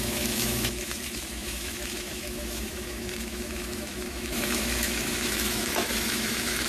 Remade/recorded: remade